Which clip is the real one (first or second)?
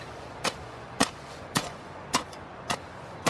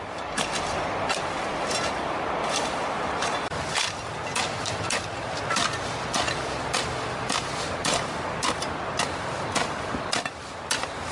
second